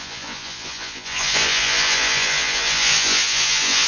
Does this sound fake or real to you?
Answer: fake